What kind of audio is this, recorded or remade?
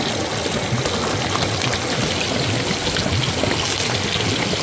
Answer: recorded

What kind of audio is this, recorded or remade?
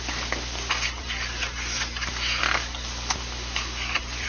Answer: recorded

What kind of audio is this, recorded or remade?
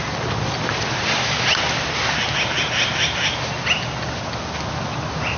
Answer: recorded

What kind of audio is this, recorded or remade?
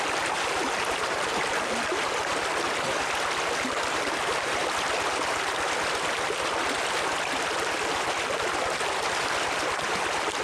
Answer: recorded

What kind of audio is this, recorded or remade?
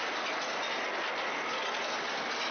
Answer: recorded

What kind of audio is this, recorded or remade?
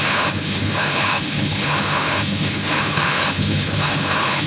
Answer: remade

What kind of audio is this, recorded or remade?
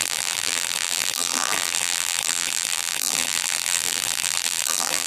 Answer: remade